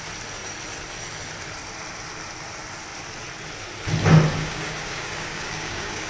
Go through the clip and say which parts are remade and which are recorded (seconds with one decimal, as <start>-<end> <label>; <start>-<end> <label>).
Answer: 0.0-4.3 recorded; 4.3-6.1 remade